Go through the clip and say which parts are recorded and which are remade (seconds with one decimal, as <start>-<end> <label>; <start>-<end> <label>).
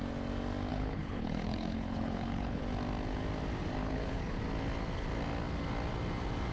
0.0-0.7 recorded; 0.7-2.6 remade; 2.6-3.8 recorded; 3.8-4.4 remade; 4.4-6.5 recorded